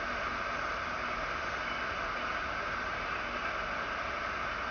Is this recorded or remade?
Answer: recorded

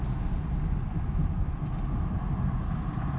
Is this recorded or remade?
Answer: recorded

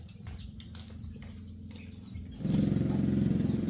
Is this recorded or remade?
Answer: recorded